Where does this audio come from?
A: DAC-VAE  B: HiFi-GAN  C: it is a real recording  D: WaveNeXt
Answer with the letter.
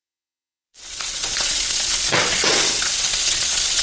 D